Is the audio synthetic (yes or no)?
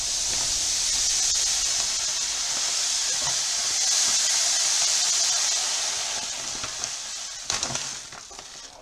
no